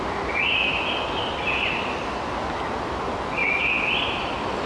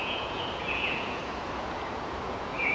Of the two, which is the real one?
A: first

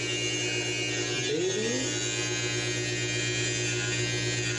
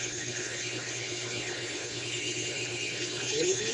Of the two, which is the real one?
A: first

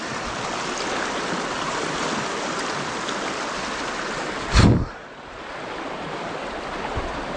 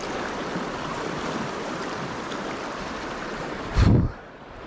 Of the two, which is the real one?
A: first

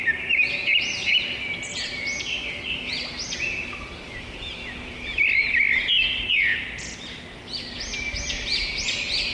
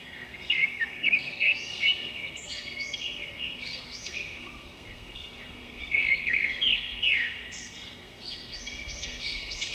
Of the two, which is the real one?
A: first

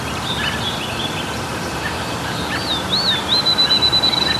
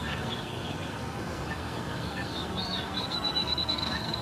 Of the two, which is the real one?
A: first